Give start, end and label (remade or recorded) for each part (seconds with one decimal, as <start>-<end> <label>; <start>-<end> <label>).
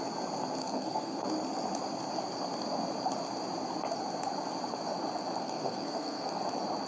0.0-0.6 recorded; 0.6-1.2 remade; 1.2-5.4 recorded; 5.4-6.4 remade; 6.4-6.9 recorded